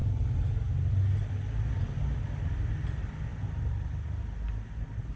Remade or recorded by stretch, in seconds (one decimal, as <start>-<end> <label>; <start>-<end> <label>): 0.0-5.2 recorded